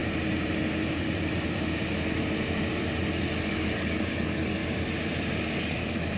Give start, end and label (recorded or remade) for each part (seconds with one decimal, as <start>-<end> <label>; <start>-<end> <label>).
0.0-3.5 recorded; 3.5-4.6 remade; 4.6-5.5 recorded; 5.5-6.2 remade